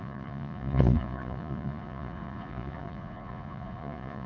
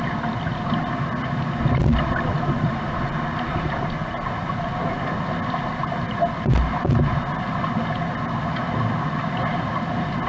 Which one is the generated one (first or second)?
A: first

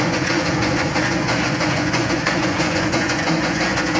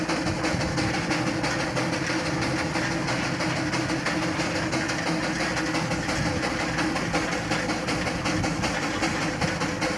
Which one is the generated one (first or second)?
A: first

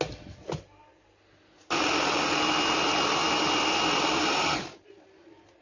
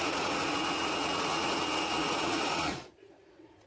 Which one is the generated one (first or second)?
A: second